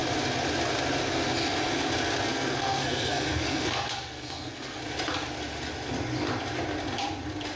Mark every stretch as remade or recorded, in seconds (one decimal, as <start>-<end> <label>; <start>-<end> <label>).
0.0-2.3 recorded; 2.3-4.8 remade; 4.8-7.6 recorded